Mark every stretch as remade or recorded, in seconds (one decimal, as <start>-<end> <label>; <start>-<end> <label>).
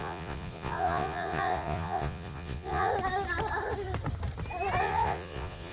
0.0-2.9 remade; 2.9-4.8 recorded; 4.8-5.7 remade